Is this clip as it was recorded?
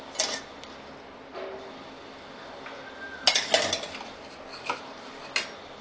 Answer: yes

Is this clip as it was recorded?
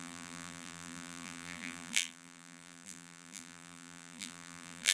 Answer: no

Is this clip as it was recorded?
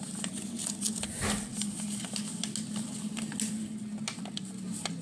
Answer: yes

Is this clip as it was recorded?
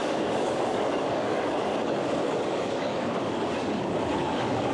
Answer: no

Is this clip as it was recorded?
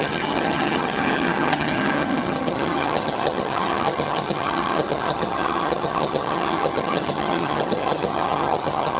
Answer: no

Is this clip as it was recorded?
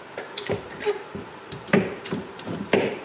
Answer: no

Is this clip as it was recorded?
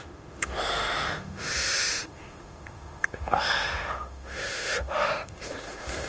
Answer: no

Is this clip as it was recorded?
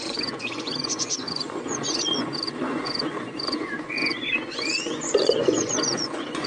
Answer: no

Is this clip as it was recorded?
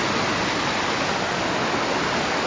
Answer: yes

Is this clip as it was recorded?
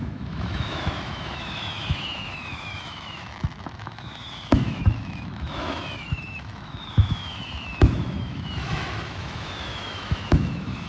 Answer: no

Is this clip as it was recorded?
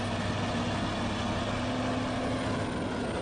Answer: yes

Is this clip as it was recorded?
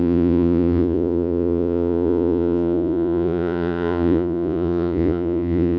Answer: no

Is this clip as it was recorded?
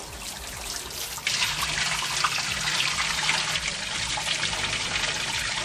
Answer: yes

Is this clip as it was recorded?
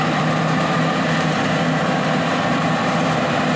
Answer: no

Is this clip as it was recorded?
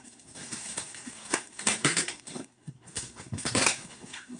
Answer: no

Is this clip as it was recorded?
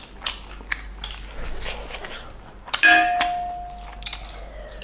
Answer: yes